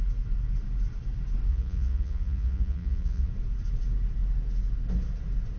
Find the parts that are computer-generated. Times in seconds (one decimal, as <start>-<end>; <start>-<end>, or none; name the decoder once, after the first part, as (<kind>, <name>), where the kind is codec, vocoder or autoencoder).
1.5-3.3 (vocoder, Vocos)